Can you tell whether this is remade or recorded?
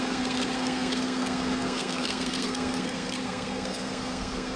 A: remade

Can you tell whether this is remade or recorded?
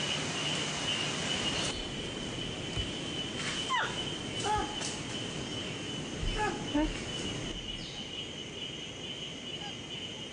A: recorded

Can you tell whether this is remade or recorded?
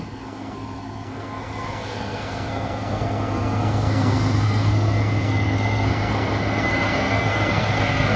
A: remade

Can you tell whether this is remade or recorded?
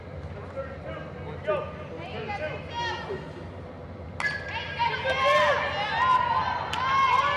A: recorded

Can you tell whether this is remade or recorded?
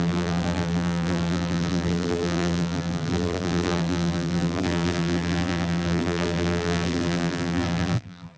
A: remade